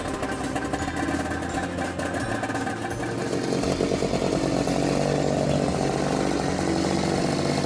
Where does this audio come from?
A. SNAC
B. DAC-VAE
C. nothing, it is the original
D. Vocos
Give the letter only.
C